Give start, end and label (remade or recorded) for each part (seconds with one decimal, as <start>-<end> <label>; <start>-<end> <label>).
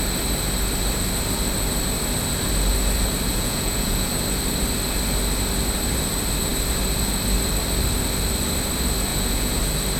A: 0.0-3.3 recorded; 3.3-4.1 remade; 4.1-9.1 recorded; 9.1-9.6 remade; 9.6-10.0 recorded